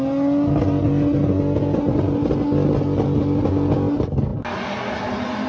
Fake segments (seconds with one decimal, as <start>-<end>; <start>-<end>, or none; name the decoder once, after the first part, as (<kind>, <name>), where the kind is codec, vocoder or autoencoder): none